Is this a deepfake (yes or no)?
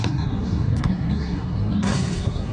yes